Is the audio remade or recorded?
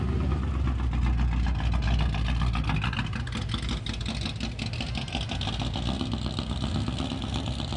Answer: recorded